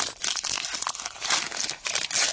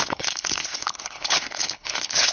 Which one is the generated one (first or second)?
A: second